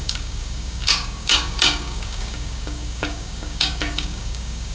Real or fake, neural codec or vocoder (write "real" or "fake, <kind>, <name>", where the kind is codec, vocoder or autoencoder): fake, codec, DAC